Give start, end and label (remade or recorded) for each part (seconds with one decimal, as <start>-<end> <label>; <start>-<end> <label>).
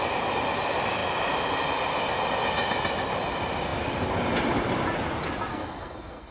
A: 0.0-5.5 recorded; 5.5-6.3 remade